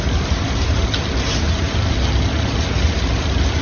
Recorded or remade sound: recorded